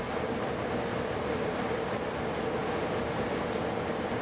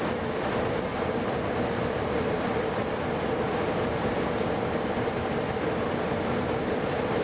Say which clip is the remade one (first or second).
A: second